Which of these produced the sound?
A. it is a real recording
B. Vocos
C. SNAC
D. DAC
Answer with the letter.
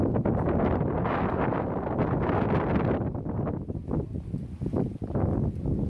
A